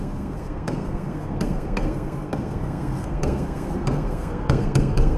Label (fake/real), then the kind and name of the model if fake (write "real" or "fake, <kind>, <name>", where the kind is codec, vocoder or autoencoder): fake, codec, SNAC